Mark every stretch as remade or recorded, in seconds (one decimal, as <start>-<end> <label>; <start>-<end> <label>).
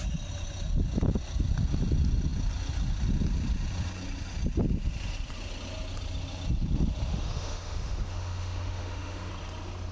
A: 0.0-7.1 recorded; 7.1-9.3 remade; 9.3-9.9 recorded